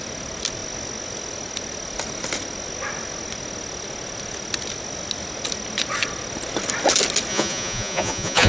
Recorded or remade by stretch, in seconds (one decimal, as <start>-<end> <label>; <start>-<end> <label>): 0.0-7.3 recorded; 7.3-8.5 remade